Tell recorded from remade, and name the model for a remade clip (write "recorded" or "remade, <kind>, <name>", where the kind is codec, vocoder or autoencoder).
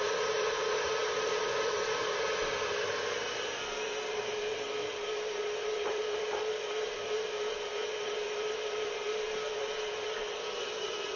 remade, vocoder, BigVGAN v2